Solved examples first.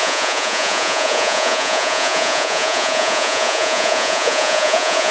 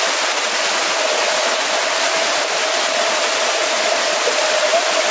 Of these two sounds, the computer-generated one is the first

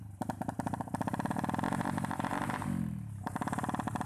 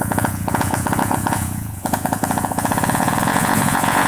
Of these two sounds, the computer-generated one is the second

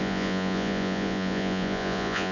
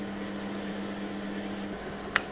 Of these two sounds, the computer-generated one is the first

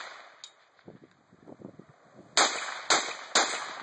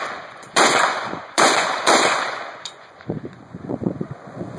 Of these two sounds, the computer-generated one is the second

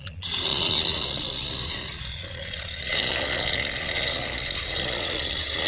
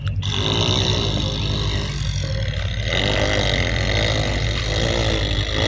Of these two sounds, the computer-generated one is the first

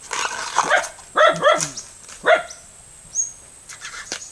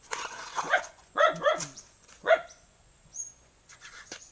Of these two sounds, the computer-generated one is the second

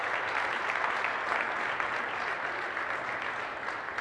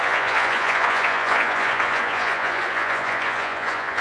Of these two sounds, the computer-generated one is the second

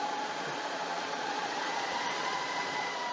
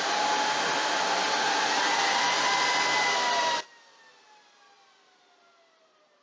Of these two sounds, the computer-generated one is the first